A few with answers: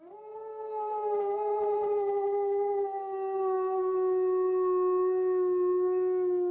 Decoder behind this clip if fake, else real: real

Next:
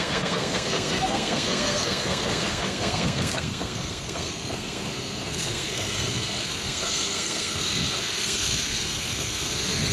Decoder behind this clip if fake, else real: fake, codec, SNAC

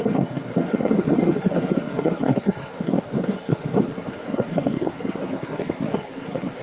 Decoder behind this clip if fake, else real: fake, codec, SNAC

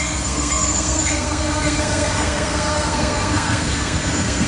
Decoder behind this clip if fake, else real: fake, codec, SNAC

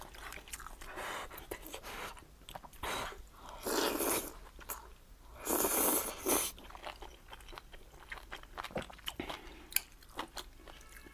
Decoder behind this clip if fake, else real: real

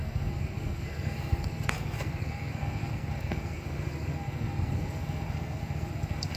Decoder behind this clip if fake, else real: fake, codec, SNAC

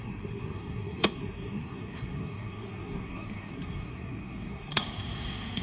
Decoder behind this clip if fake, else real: fake, codec, SNAC